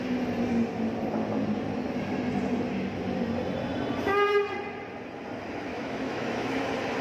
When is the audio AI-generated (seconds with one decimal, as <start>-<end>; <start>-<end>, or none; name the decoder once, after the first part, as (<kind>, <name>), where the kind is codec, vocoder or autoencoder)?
5.7-6.6 (autoencoder, DAC-VAE)